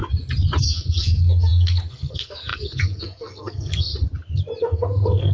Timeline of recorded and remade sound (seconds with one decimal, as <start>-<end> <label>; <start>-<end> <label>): 0.0-0.6 recorded; 0.6-3.9 remade; 3.9-4.6 recorded; 4.6-5.3 remade